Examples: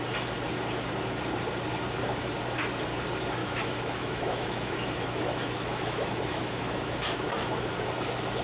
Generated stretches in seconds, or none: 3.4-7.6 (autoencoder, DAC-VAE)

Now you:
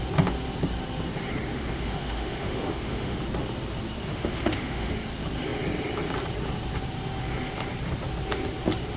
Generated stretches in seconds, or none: 1.5-3.2 (autoencoder, DAC-VAE); 4.1-4.9